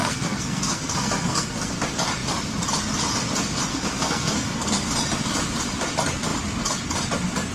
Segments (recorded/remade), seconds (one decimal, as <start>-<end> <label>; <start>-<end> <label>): 0.0-1.7 remade; 1.7-3.7 recorded; 3.7-4.9 remade; 4.9-7.5 recorded